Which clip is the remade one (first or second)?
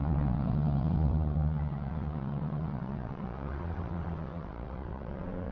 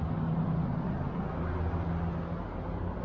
first